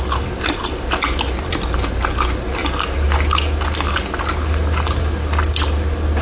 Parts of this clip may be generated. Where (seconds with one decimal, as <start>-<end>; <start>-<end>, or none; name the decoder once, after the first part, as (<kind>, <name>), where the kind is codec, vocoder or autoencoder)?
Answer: none